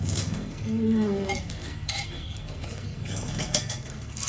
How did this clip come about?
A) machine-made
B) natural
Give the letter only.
A